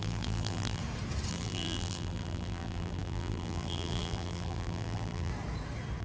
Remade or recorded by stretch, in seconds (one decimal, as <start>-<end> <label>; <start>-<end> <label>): 0.0-0.8 remade; 0.8-1.3 recorded; 1.3-5.3 remade; 5.3-6.0 recorded